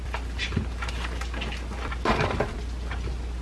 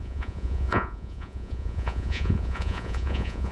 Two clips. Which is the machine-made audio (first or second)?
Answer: second